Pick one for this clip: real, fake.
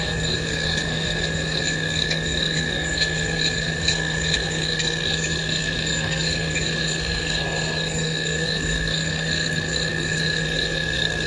fake